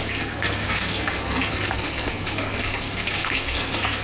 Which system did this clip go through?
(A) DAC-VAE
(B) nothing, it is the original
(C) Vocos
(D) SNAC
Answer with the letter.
D